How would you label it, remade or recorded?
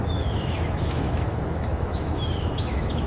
remade